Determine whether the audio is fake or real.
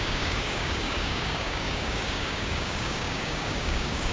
fake